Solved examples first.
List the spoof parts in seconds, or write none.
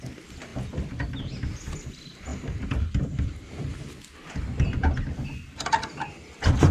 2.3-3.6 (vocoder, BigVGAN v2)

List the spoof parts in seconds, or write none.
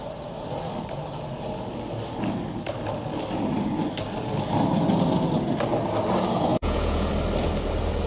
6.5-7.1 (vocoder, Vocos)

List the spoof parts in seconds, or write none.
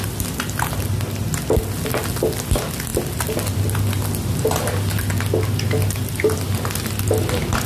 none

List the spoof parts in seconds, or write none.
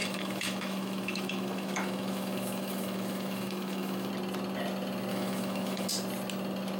0.0-4.1 (autoencoder, DAC-VAE); 5.1-5.9